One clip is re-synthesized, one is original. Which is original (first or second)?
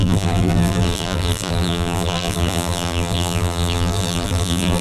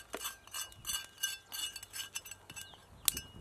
second